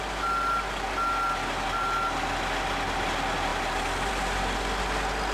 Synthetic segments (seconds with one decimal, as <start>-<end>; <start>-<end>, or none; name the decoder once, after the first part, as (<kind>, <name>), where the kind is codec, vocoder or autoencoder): none